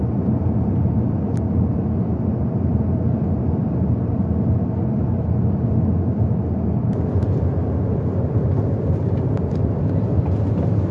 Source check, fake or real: real